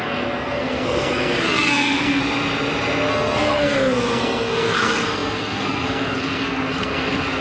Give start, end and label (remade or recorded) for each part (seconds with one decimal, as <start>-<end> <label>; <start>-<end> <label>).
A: 0.0-2.2 remade; 2.2-3.1 recorded; 3.1-7.4 remade